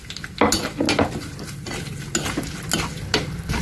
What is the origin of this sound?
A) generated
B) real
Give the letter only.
B